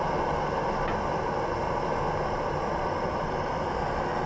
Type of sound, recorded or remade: recorded